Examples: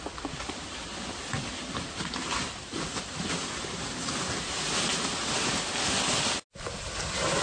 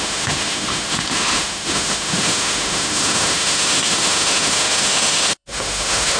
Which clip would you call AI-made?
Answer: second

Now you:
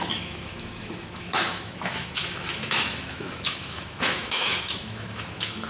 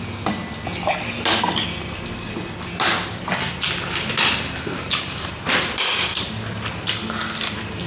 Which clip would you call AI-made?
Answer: first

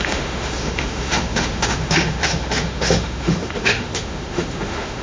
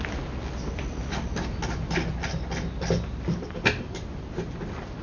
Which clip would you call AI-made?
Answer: first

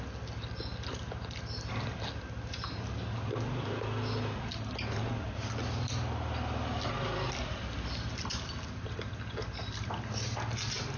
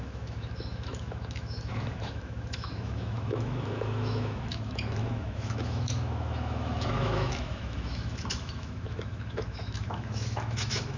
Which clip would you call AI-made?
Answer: second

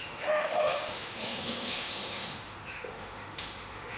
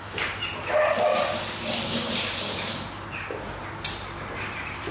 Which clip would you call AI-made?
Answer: first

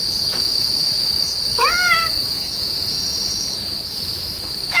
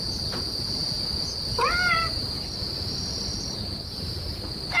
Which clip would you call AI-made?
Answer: first